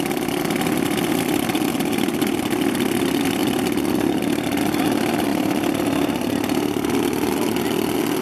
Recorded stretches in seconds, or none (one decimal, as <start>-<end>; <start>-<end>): 0.0-8.2